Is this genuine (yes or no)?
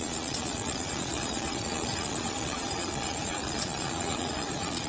no